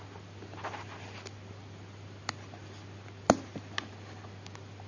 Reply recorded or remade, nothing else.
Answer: recorded